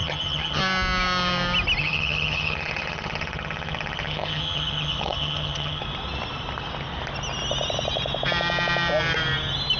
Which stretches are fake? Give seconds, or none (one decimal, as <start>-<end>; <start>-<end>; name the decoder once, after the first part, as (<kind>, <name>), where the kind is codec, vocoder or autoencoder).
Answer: 0.0-0.6 (vocoder, HiFi-GAN); 1.8-5.8